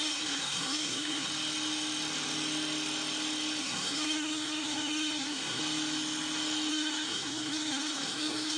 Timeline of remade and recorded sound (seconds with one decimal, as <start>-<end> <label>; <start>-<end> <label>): 0.0-1.3 remade; 1.3-3.6 recorded; 3.6-5.6 remade; 5.6-6.7 recorded; 6.7-8.6 remade